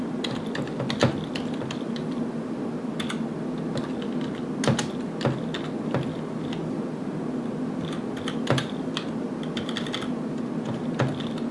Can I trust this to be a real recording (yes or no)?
yes